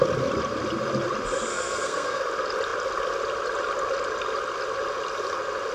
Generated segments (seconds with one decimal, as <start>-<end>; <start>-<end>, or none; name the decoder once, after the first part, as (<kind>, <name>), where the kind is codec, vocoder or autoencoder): 1.5-2.2 (codec, SNAC)

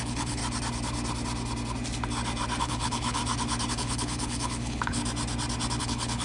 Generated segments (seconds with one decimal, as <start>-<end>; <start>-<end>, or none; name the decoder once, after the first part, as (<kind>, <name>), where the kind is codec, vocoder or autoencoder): 0.0-0.4 (codec, HILCodec); 2.6-3.2; 3.7-5.0; 5.8-6.2

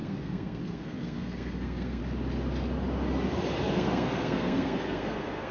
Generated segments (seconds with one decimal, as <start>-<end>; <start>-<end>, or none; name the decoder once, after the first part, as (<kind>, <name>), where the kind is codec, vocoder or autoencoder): 0.0-2.0 (codec, SNAC); 3.7-5.5

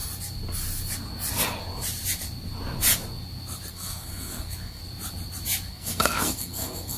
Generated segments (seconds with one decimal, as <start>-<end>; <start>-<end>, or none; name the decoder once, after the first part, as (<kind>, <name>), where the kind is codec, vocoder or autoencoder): 3.7-4.8 (codec, SNAC); 5.7-7.0

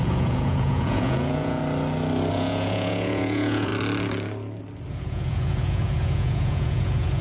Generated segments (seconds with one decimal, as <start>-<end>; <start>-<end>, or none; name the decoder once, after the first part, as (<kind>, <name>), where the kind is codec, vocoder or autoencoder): 0.0-1.6 (vocoder, Vocos); 2.3-3.7; 4.9-7.2

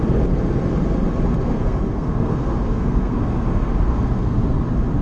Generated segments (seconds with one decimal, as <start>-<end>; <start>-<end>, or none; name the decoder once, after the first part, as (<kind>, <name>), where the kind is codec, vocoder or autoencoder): 1.4-4.4 (codec, SNAC)

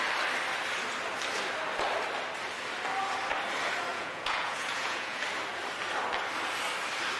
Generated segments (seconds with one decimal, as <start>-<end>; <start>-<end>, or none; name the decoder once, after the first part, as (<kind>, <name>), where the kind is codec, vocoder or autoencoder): 3.9-5.2 (vocoder, Vocos)